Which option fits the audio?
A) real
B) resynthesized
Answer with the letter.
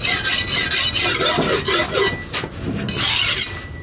A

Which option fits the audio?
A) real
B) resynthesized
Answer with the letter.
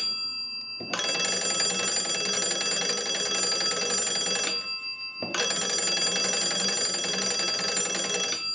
A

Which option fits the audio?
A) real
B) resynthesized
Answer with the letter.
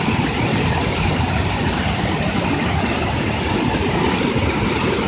A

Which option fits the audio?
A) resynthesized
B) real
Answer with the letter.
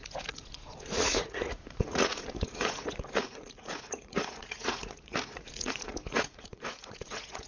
A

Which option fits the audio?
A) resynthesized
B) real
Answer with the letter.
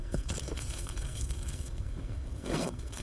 A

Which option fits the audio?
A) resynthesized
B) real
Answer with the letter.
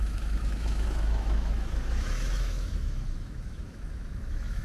A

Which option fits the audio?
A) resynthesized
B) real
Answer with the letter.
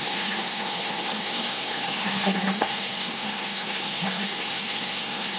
A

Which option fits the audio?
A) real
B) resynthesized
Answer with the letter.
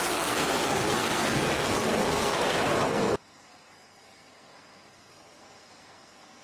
B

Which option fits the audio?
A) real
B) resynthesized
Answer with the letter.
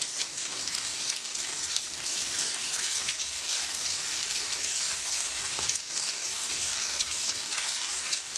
B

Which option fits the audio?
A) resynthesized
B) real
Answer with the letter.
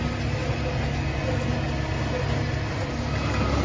B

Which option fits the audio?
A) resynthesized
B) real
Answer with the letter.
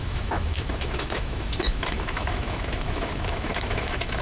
A